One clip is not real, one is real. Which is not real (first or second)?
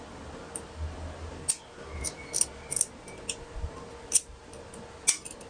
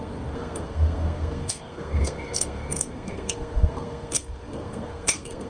second